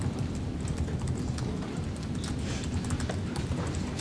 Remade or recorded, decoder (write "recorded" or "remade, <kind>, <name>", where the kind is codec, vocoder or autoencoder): recorded